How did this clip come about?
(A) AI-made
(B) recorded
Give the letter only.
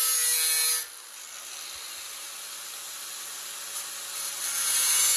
B